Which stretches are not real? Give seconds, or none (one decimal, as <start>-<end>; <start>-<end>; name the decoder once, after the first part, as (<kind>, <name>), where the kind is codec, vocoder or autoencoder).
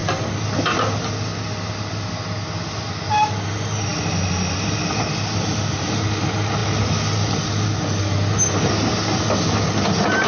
none